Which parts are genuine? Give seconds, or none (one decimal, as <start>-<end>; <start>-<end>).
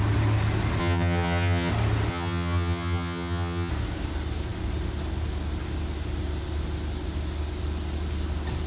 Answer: 0.0-0.8; 1.7-2.1; 3.7-8.7